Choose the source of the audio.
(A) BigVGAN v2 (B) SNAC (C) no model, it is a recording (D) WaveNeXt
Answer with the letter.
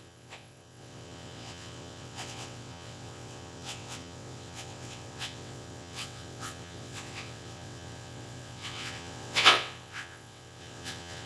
D